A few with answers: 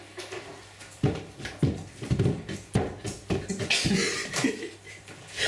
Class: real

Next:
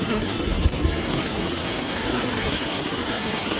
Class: fake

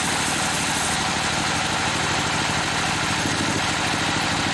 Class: real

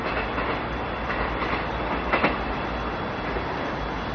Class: real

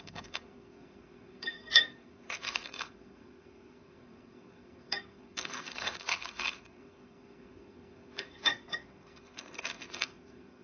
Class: fake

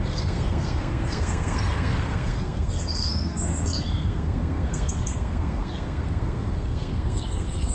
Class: fake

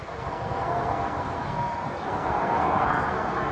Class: fake